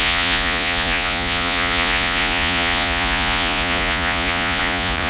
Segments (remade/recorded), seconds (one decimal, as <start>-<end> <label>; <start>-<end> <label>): 0.0-5.1 remade